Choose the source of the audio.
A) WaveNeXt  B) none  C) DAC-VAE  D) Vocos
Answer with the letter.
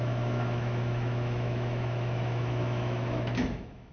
C